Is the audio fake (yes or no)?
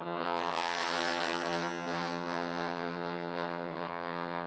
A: yes